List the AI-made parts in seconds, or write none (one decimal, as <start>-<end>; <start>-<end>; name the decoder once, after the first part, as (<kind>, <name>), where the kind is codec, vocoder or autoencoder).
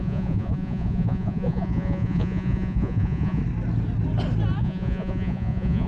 0.0-3.4 (vocoder, Vocos); 4.6-5.9